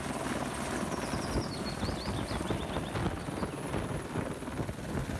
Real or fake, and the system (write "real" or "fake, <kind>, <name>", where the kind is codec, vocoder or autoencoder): real